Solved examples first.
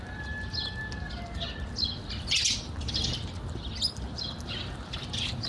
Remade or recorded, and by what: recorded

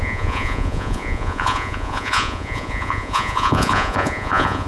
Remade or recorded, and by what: remade, vocoder, Vocos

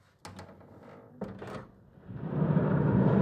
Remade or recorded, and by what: recorded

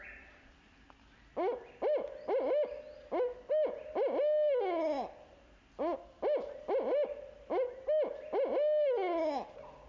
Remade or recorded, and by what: recorded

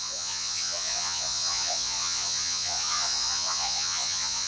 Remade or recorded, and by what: remade, vocoder, Vocos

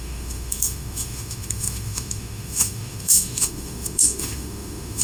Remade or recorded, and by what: remade, autoencoder, DAC-VAE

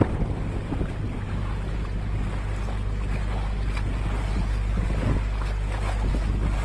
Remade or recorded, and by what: recorded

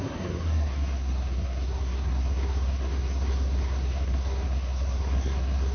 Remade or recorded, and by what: remade, codec, SNAC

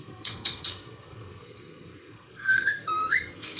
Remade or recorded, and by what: remade, codec, SNAC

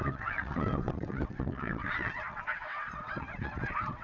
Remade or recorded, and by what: remade, vocoder, WaveNeXt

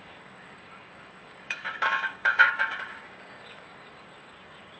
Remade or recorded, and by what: remade, codec, DAC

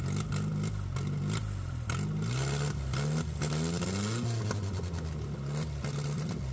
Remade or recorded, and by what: recorded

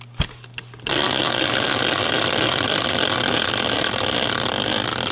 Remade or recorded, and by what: recorded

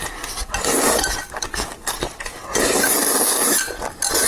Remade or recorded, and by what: recorded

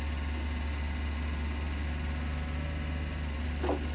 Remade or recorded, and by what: recorded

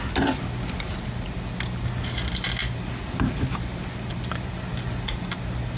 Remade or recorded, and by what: recorded